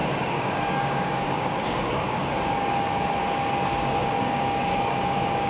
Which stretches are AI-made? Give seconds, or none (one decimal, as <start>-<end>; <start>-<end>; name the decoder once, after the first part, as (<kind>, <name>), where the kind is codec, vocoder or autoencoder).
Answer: 0.0-3.2 (codec, DAC); 3.8-5.5